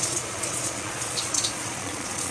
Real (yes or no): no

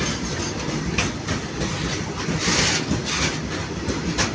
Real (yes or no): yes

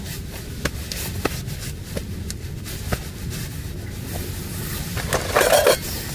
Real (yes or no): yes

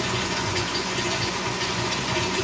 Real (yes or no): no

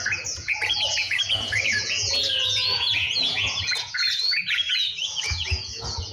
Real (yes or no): no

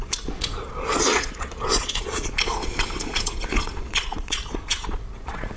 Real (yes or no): no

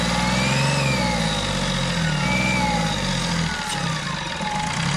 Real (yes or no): yes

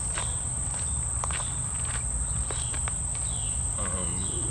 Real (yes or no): yes